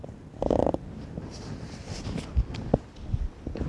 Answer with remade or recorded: recorded